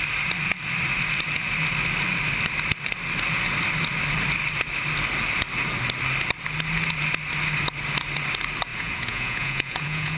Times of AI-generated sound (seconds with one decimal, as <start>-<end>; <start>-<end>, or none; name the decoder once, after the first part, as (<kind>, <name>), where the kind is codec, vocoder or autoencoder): 8.7-10.2 (vocoder, Vocos)